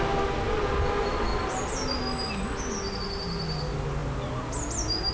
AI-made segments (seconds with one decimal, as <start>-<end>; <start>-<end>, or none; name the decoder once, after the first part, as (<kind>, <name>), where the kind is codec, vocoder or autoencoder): none